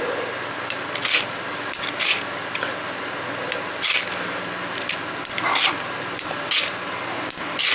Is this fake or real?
real